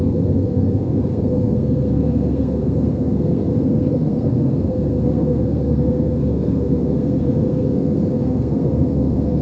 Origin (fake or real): fake